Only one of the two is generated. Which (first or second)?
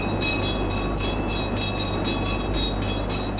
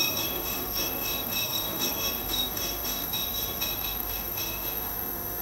second